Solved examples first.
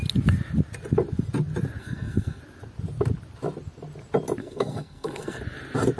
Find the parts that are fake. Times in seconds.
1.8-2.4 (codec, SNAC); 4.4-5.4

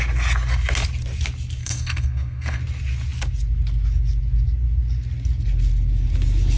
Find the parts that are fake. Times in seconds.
1.6-2.6 (codec, SNAC)

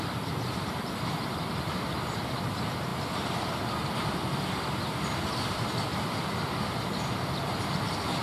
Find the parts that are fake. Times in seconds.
none

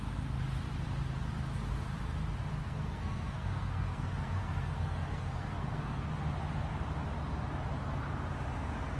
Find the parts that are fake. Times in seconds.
2.5-6.1 (codec, SNAC)

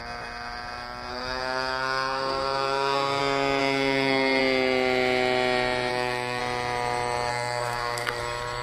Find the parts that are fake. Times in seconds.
1.1-3.2 (codec, SNAC); 3.6-4.4; 5.9-6.4; 7.3-8.2

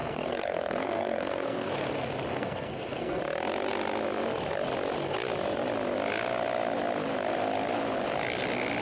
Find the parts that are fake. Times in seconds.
0.0-1.7 (codec, SNAC); 2.3-3.2

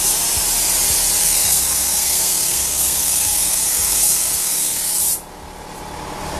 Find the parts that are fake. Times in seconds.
1.2-5.0 (codec, SNAC)